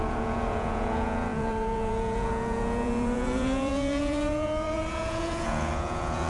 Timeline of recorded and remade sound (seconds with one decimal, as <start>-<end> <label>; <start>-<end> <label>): 0.0-6.3 remade